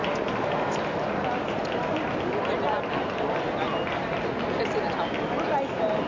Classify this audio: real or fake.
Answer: real